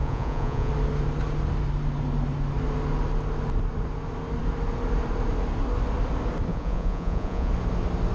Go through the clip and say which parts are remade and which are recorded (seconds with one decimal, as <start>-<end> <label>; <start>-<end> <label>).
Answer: 0.0-0.7 remade; 0.7-6.5 recorded; 6.5-7.5 remade; 7.5-8.1 recorded